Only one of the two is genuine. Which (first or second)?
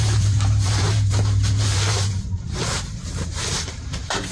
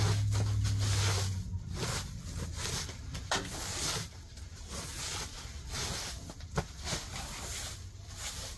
second